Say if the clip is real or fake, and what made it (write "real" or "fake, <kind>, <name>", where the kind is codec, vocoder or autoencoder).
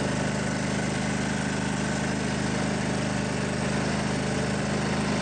real